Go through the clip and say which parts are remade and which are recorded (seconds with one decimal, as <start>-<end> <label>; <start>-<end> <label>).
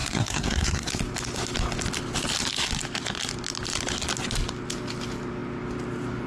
0.0-0.9 remade; 0.9-6.3 recorded